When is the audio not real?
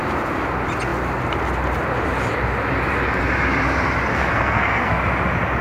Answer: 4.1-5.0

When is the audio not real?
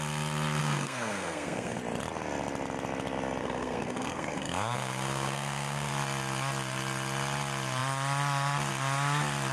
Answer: 0.6-1.8; 3.4-5.9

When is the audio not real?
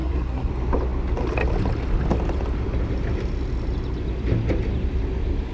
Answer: 0.0-0.5